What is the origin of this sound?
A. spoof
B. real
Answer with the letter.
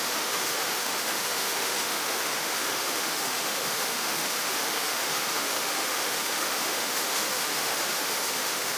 A